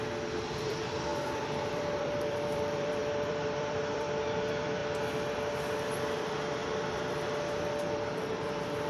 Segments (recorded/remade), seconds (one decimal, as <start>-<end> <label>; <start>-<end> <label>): 0.0-1.1 remade; 1.1-1.7 recorded; 1.7-4.8 remade; 4.8-8.4 recorded; 8.4-8.9 remade